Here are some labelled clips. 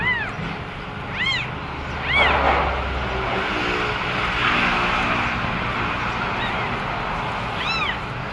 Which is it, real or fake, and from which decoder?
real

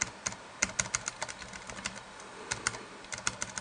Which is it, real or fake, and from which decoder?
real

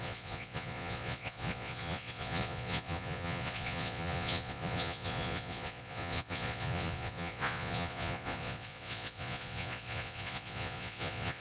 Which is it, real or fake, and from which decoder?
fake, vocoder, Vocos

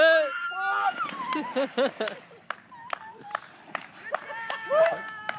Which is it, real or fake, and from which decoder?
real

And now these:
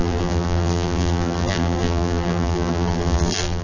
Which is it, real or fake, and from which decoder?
fake, vocoder, BigVGAN v2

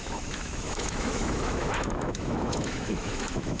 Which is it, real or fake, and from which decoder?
fake, autoencoder, DAC-VAE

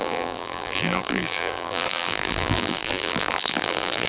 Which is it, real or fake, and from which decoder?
fake, vocoder, BigVGAN v2